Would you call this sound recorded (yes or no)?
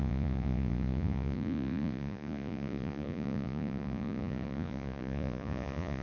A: no